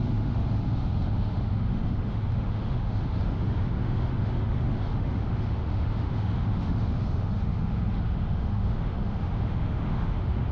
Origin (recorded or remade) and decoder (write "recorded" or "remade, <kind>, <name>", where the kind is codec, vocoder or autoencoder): remade, autoencoder, DAC-VAE